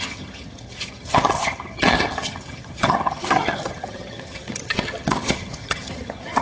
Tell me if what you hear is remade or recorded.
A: remade